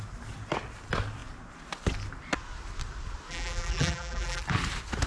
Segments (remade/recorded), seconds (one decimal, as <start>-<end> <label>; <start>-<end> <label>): 0.0-3.3 recorded; 3.3-4.4 remade; 4.4-5.1 recorded